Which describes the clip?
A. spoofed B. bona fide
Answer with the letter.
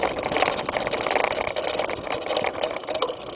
B